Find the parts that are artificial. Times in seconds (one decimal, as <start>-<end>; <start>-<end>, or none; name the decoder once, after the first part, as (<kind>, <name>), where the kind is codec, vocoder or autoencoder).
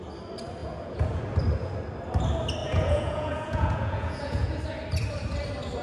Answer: 0.6-1.2 (vocoder, Vocos); 2.6-4.6